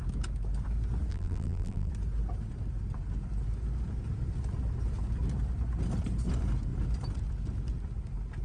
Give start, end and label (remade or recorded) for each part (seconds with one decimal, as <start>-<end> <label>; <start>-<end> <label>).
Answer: 0.0-1.1 recorded; 1.1-1.9 remade; 1.9-8.4 recorded